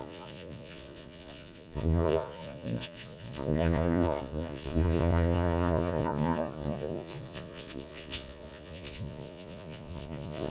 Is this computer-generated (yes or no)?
yes